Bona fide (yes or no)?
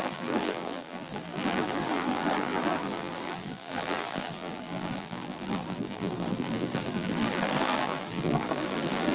no